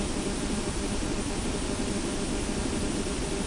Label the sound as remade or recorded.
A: recorded